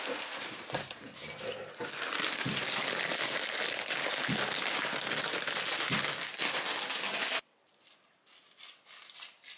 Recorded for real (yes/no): yes